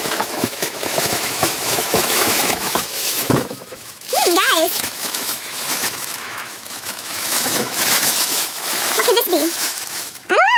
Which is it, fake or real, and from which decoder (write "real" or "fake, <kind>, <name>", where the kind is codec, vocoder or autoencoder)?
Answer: fake, autoencoder, DAC-VAE